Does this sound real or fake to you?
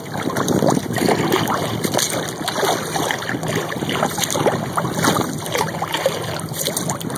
real